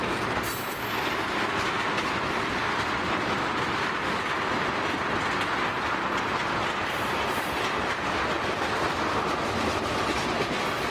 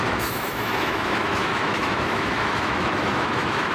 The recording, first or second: first